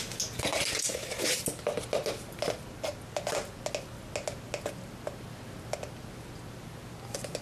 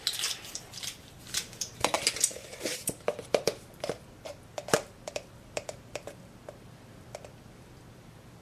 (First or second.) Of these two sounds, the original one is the first